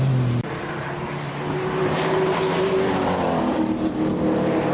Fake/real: fake